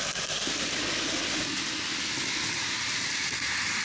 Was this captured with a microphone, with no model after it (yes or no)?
yes